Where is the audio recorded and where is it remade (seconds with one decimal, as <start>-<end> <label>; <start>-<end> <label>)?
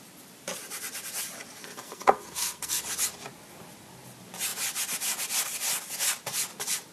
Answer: 0.0-1.6 recorded; 1.6-2.8 remade; 2.8-6.9 recorded